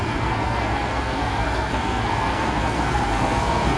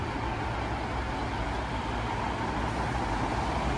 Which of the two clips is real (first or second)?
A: second